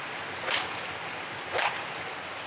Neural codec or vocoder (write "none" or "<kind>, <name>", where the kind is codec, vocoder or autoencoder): none